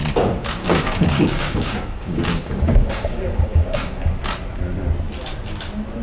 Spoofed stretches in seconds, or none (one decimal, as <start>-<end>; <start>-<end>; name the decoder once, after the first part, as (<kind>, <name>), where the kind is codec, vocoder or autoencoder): 0.6-4.2 (codec, DAC)